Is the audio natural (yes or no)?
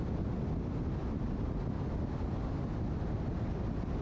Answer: yes